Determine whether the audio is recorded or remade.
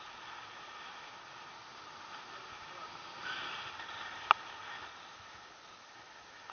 recorded